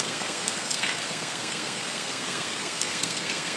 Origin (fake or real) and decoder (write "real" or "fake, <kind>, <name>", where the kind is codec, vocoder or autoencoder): fake, codec, SNAC